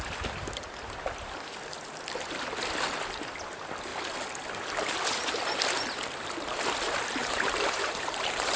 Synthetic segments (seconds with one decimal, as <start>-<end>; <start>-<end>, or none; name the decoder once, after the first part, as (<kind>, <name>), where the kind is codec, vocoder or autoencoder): 7.2-8.6 (vocoder, BigVGAN v2)